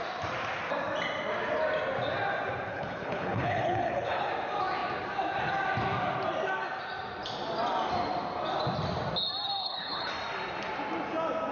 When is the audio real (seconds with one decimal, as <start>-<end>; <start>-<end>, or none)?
0.0-2.7; 4.3-9.6; 10.1-11.5